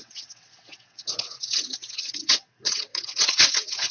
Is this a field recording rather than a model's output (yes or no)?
no